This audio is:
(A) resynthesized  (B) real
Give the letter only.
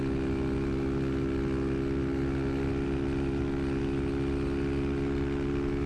B